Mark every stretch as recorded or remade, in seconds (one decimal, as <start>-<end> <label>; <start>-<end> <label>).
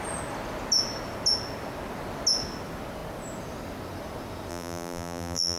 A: 0.0-4.5 recorded; 4.5-5.6 remade